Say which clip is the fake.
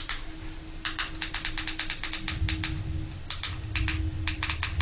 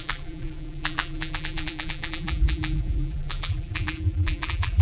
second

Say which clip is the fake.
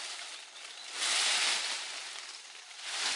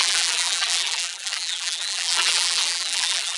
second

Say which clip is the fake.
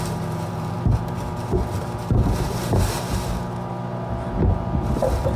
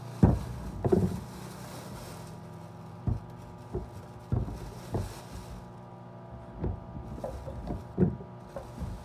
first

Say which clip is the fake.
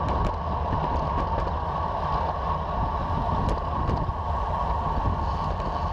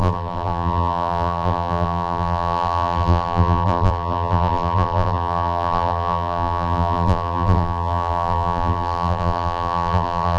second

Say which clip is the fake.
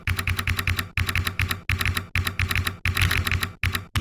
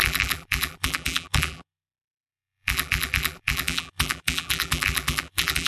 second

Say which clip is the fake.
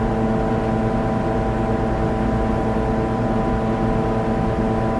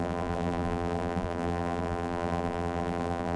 second